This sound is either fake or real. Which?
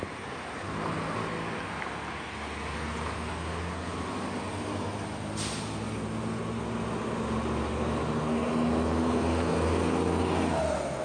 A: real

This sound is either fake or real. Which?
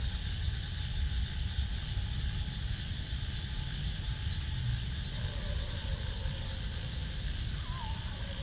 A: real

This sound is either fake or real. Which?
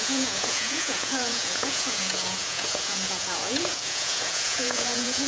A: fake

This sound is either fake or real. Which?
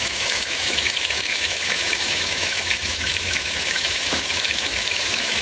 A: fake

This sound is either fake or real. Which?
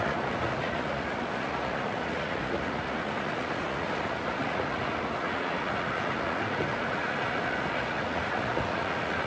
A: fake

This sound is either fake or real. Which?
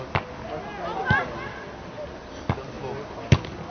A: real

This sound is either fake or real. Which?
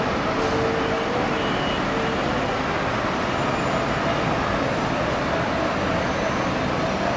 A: real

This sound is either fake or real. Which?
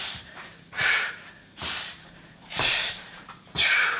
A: fake